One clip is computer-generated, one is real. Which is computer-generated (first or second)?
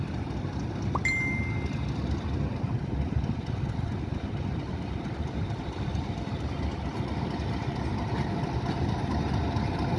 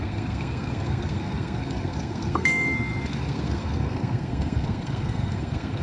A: second